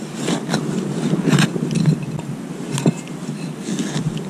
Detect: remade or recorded recorded